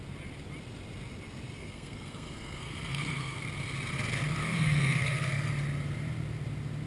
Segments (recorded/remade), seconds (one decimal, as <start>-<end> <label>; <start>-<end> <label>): 0.0-1.6 recorded; 1.6-3.4 remade; 3.4-4.4 recorded; 4.4-5.5 remade; 5.5-6.9 recorded